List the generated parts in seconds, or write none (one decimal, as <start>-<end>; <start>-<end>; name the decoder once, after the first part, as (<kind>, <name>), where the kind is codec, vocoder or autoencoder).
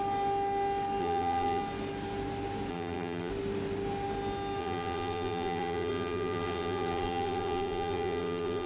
1.0-1.6 (vocoder, BigVGAN v2); 2.7-3.3; 4.6-8.7